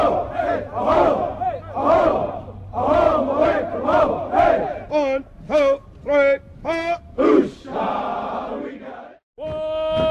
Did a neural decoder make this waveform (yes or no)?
no